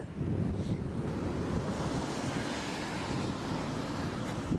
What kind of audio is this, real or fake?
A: real